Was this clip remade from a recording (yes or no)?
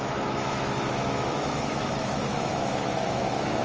yes